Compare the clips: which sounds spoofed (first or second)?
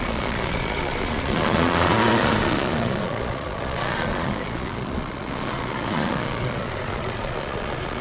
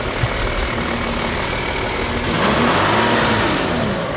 first